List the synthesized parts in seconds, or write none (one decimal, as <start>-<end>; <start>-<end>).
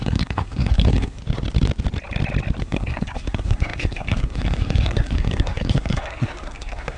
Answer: 0.0-1.2; 2.6-7.0